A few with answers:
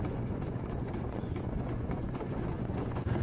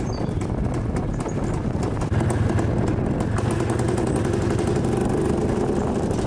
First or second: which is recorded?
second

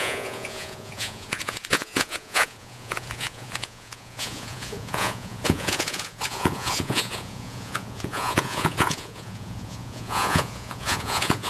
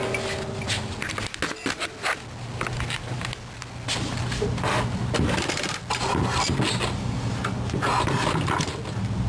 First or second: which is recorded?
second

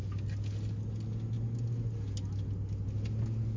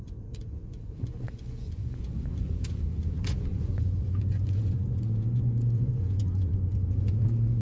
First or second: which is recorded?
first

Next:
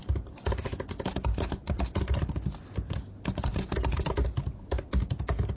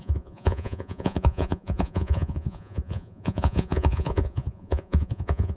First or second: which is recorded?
first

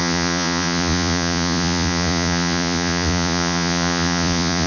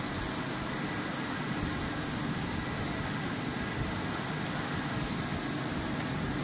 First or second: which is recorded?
second